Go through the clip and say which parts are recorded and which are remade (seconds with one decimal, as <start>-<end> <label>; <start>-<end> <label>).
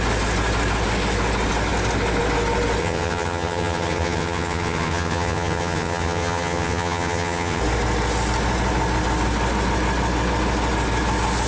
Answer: 0.0-2.8 recorded; 2.8-7.6 remade; 7.6-11.5 recorded